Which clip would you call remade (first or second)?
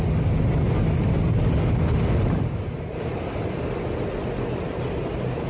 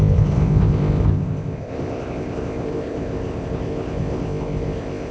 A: second